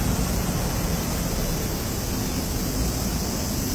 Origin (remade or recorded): recorded